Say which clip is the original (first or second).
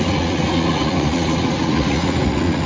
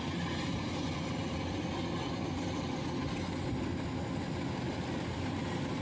second